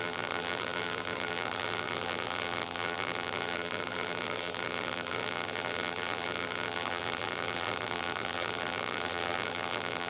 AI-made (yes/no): yes